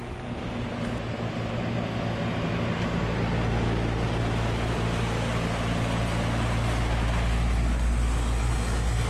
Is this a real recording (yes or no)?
yes